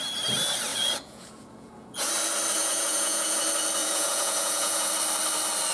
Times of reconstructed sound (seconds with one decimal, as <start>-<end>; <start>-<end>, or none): 0.7-2.1; 2.6-3.4; 3.8-4.9